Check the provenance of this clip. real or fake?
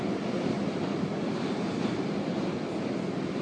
real